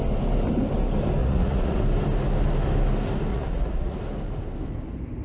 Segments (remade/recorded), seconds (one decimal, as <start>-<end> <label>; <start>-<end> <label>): 0.0-1.2 recorded; 1.2-1.8 remade; 1.8-3.3 recorded; 3.3-4.0 remade; 4.0-5.2 recorded